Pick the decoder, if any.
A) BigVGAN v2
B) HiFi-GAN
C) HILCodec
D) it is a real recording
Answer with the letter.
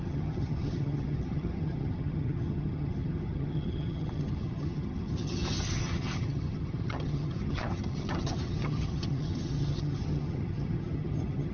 B